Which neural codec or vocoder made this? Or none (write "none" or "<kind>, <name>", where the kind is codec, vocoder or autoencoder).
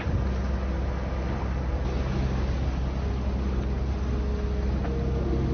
none